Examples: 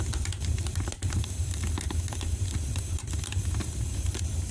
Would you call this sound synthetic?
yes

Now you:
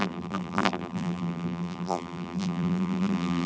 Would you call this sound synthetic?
yes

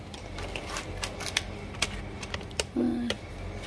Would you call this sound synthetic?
no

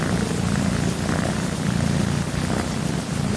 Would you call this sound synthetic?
no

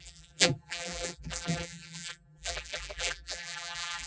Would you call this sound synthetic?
yes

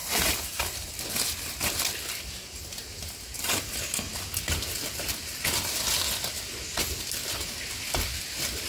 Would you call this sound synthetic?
no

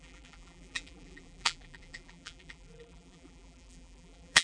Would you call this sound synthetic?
yes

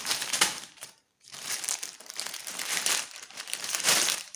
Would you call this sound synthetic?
yes